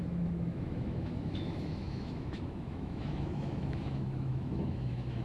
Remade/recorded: remade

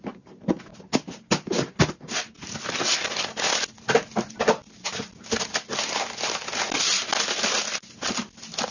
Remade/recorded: recorded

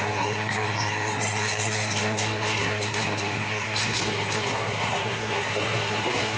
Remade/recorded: remade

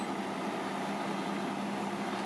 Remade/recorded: recorded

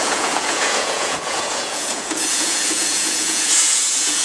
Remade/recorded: remade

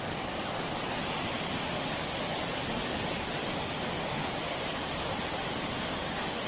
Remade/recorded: recorded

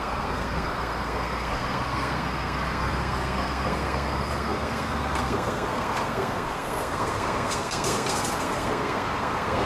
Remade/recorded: remade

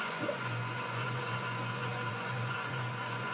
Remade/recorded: remade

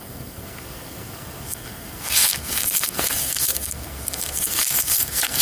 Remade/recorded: remade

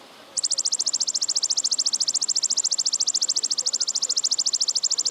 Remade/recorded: recorded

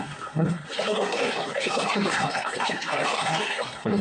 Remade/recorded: remade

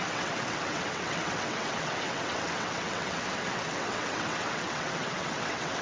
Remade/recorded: remade